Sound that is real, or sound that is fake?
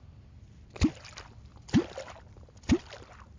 real